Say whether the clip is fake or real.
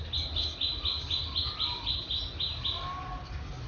real